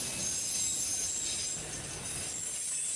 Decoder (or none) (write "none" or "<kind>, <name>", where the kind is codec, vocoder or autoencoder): none